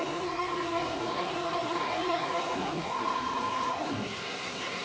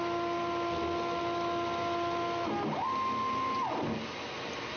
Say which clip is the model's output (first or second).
first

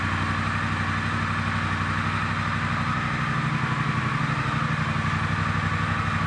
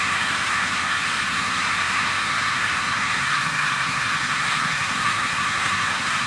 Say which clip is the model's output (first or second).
second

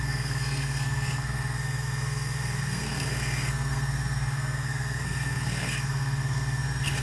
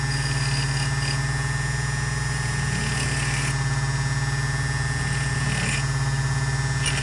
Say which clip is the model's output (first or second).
first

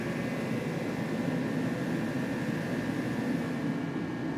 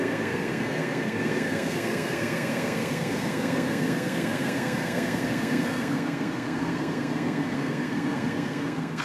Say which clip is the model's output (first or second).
second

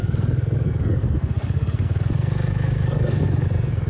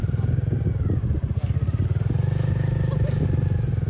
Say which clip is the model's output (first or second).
first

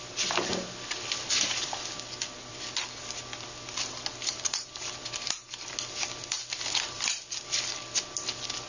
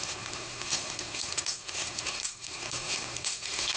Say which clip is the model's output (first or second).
second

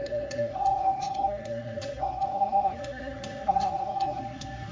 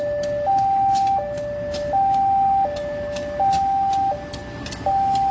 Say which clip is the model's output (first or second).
first